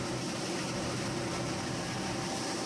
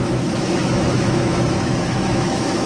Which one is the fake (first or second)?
second